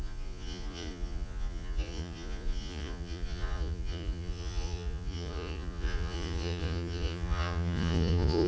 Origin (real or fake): fake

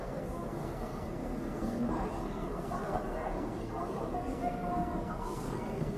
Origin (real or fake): fake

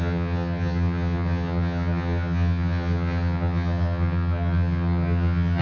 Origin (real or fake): fake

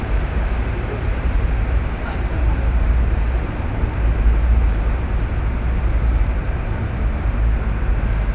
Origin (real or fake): fake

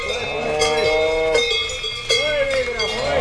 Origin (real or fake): real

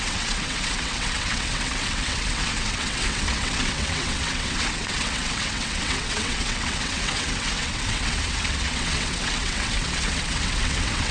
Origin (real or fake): fake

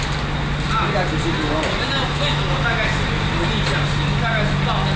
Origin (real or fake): real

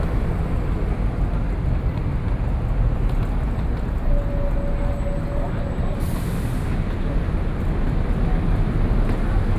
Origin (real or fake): real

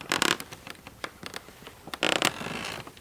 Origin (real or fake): real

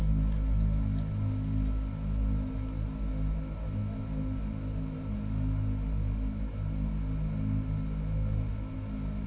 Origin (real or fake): real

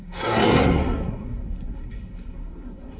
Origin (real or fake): fake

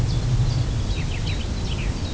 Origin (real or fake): real